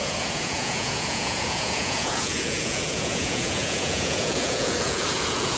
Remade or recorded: remade